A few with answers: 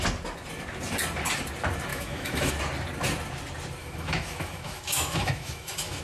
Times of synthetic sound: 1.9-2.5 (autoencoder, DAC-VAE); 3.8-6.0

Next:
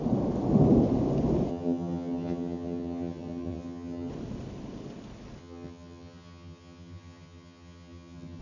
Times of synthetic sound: 1.5-4.1 (vocoder, HiFi-GAN); 5.4-8.4

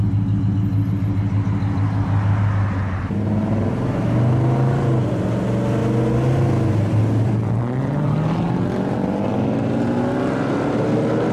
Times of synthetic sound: none

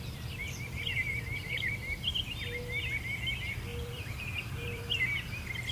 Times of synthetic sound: 0.4-2.6 (vocoder, BigVGAN v2); 3.7-5.0

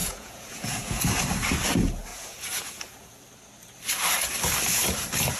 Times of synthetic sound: 0.0-1.0 (vocoder, Vocos); 2.1-3.1